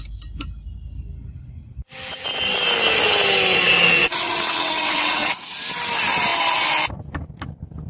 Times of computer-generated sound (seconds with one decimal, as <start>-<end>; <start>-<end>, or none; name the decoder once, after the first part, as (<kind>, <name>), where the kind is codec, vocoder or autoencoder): 4.0-5.3 (vocoder, WaveNeXt)